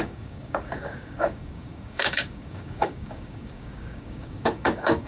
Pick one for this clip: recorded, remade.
remade